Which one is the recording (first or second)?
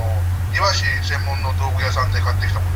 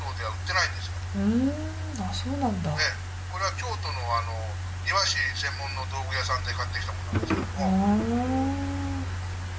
second